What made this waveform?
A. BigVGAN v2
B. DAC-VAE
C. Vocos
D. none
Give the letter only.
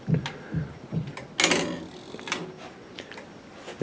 D